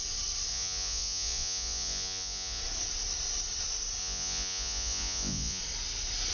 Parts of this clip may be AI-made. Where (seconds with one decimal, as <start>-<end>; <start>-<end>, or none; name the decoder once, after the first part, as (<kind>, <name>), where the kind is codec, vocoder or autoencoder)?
0.5-2.6 (vocoder, Vocos); 4.0-5.6